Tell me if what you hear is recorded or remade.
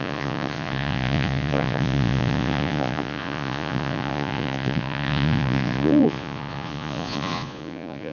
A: remade